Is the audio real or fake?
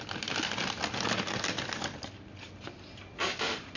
real